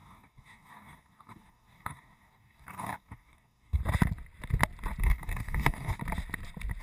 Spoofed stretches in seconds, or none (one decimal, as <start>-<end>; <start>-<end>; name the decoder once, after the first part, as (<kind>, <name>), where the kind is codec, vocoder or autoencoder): 0.0-3.8 (codec, DAC); 5.0-6.0